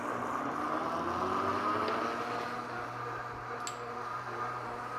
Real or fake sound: real